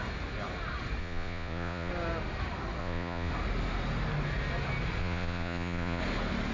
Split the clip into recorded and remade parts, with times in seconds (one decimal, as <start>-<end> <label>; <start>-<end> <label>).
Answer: 0.0-1.0 recorded; 1.0-1.9 remade; 1.9-2.8 recorded; 2.8-3.3 remade; 3.3-5.0 recorded; 5.0-6.0 remade; 6.0-6.5 recorded